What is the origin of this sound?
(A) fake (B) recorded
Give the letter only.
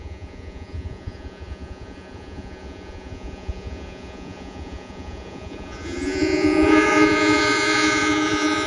A